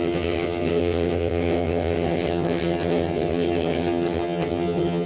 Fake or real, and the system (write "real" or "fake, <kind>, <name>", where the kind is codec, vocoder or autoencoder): fake, vocoder, HiFi-GAN